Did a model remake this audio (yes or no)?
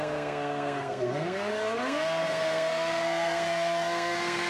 yes